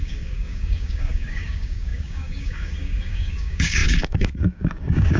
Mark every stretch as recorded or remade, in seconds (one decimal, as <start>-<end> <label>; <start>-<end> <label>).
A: 0.0-5.2 remade